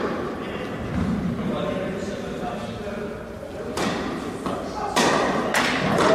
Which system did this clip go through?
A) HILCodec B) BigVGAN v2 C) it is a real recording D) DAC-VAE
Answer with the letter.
C